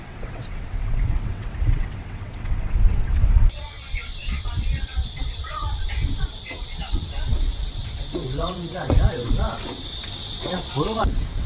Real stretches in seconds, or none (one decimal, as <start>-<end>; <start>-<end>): none